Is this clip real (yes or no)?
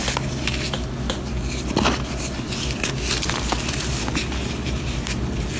yes